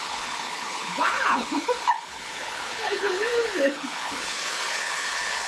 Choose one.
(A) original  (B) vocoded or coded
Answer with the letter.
B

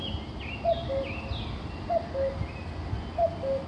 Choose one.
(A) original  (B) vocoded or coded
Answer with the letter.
A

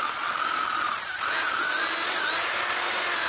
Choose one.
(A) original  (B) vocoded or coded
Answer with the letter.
A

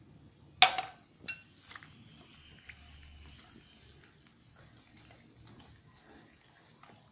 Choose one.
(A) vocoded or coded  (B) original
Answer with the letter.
B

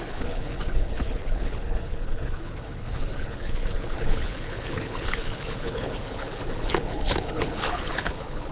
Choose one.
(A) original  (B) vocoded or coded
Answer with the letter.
B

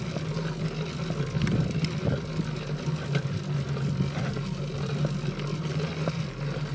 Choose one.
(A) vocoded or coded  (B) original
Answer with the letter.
B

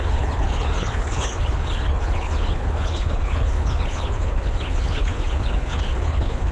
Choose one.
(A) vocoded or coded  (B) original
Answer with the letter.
A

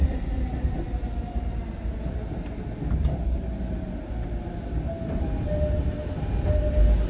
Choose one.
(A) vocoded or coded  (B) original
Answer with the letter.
B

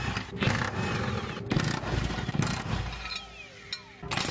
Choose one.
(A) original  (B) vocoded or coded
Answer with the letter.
A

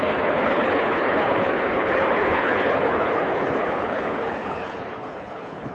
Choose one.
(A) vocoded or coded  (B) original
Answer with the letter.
A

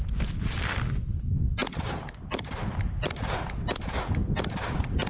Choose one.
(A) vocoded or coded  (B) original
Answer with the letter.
B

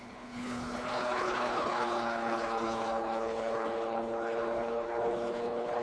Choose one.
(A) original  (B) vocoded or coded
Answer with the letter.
B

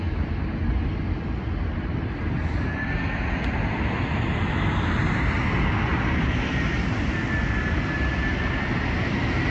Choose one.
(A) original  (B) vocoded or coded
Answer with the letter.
A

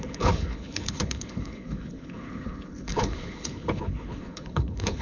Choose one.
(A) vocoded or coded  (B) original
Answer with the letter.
A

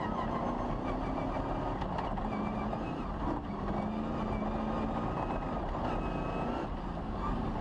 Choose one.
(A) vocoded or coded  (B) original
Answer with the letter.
B